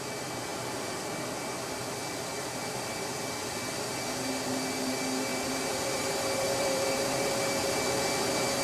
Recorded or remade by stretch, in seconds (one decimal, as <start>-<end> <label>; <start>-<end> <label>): 0.0-5.3 recorded; 5.3-7.3 remade; 7.3-8.6 recorded

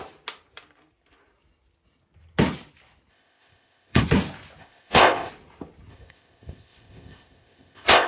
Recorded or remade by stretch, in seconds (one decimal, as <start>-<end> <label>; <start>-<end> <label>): 0.0-3.1 recorded; 3.1-4.0 remade; 4.0-4.6 recorded; 4.6-5.3 remade; 5.3-5.9 recorded; 5.9-8.1 remade

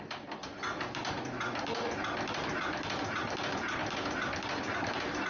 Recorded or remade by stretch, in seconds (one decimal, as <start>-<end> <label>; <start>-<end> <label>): 0.0-5.3 recorded

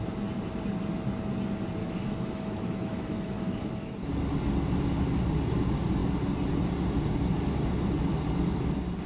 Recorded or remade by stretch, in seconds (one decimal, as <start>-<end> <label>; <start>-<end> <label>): 0.0-1.8 recorded; 1.8-4.1 remade; 4.1-9.1 recorded

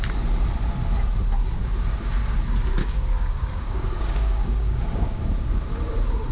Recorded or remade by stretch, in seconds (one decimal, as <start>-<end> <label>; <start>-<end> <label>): 0.0-2.8 recorded; 2.8-5.6 remade; 5.6-6.3 recorded